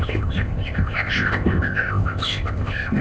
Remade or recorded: remade